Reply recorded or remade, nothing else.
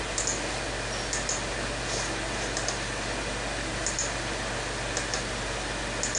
recorded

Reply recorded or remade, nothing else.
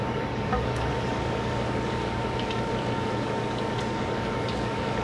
remade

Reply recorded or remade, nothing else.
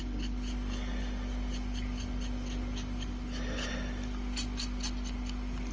recorded